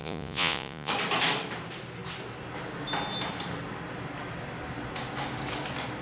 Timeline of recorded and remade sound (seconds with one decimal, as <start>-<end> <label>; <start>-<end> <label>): 0.0-0.9 remade; 0.9-6.0 recorded